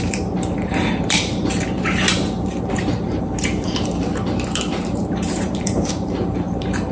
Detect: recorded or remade remade